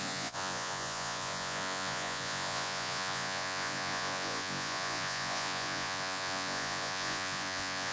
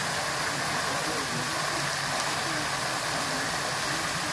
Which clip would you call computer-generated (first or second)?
first